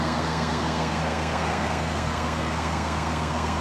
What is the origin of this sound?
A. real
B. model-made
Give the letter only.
B